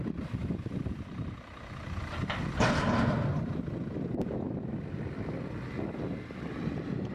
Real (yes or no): no